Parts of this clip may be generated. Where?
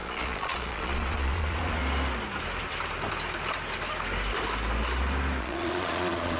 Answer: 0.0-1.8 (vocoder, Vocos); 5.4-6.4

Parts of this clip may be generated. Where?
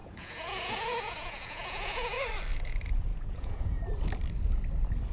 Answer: 0.0-2.3 (vocoder, Vocos); 3.1-3.8